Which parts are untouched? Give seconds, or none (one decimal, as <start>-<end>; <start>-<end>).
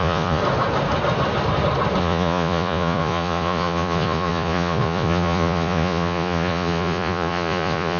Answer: 0.4-2.0